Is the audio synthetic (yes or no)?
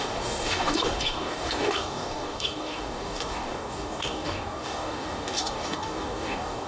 yes